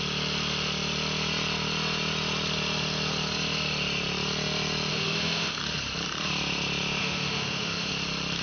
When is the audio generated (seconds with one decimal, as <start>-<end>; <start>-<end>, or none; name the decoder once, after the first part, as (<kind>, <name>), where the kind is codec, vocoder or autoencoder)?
4.9-5.6 (autoencoder, DAC-VAE); 7.0-7.9